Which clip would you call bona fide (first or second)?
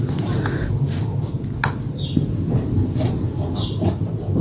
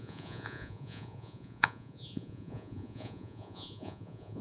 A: first